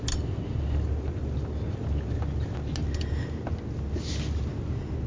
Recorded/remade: recorded